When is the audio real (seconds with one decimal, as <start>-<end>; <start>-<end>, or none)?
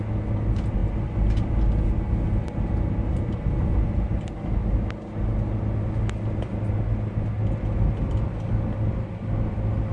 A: 0.0-9.9